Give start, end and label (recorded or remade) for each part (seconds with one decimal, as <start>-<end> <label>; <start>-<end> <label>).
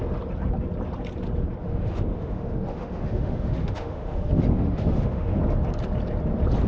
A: 0.0-1.6 recorded; 1.6-5.4 remade; 5.4-6.7 recorded